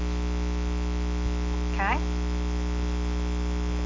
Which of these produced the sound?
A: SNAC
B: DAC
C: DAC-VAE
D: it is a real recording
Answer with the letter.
D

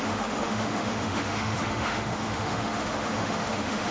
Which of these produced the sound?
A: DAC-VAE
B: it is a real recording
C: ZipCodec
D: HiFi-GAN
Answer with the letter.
A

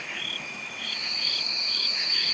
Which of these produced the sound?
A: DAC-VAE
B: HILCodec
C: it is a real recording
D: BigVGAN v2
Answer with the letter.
A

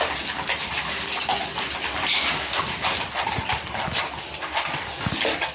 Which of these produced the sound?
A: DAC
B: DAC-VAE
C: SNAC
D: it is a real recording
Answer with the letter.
D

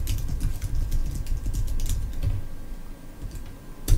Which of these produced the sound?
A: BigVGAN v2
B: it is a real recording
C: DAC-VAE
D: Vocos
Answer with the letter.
B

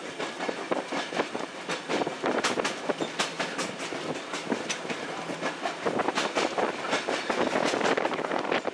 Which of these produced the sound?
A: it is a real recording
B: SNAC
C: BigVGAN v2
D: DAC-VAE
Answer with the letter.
A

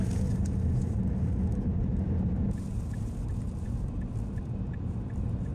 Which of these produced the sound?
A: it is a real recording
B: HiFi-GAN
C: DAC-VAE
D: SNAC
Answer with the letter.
A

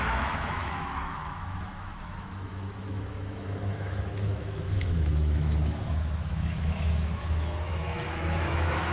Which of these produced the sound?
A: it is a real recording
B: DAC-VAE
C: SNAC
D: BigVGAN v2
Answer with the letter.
B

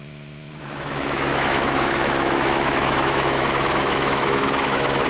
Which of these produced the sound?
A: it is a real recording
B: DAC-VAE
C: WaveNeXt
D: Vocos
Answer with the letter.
B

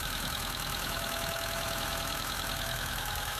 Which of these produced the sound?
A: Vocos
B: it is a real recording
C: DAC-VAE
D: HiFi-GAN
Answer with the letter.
C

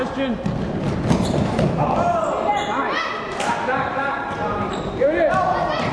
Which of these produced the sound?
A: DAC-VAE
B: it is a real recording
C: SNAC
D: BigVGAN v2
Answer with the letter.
B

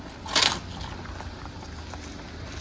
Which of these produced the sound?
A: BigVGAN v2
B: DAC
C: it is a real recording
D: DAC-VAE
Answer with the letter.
C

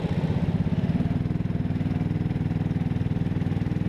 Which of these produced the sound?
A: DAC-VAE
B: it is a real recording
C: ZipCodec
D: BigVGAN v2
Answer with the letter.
B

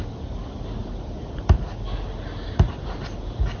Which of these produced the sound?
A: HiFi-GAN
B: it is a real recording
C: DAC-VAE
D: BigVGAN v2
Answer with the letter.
B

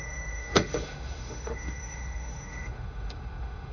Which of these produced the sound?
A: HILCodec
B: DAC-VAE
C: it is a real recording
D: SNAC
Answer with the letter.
B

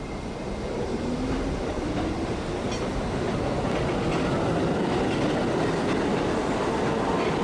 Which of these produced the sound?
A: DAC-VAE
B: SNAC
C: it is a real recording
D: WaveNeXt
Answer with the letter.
C